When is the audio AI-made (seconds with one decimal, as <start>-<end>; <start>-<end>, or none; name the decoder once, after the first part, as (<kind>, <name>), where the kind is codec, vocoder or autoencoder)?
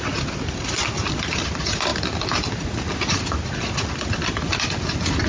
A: none